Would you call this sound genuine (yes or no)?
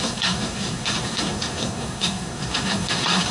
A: no